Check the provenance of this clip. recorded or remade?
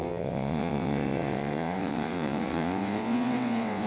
remade